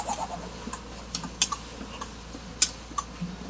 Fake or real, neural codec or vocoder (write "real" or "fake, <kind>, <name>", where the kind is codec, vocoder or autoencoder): real